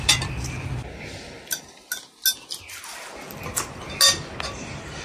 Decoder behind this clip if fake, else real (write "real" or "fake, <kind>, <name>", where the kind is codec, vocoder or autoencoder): real